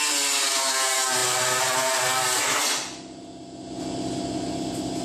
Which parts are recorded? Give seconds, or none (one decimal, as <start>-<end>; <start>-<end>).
0.0-5.0